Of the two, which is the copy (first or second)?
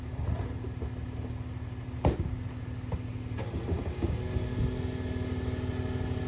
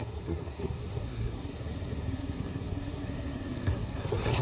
second